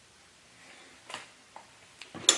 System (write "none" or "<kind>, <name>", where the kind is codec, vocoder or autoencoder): none